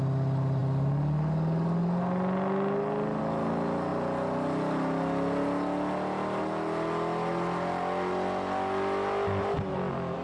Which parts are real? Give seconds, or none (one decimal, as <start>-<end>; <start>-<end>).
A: 0.0-10.2